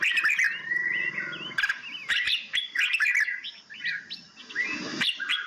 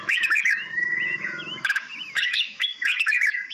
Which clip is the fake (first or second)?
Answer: second